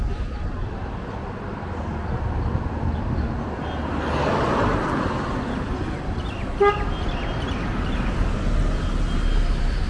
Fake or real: real